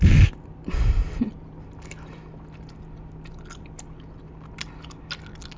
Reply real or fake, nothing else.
real